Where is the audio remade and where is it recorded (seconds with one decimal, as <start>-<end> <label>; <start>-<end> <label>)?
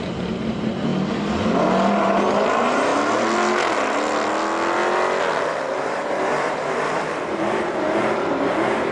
0.0-0.9 remade; 0.9-1.9 recorded; 1.9-2.9 remade; 2.9-5.7 recorded; 5.7-8.9 remade